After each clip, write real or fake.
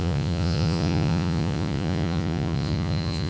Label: fake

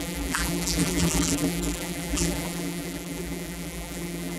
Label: fake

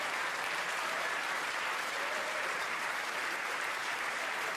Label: fake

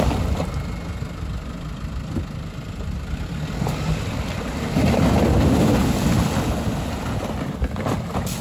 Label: real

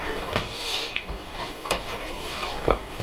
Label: fake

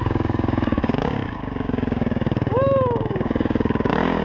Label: fake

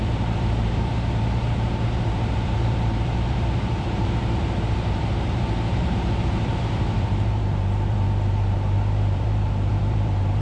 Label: fake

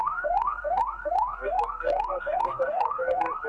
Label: fake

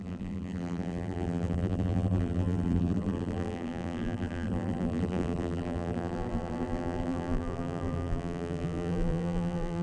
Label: fake